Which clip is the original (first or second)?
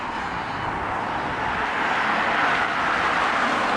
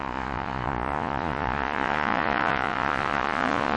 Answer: first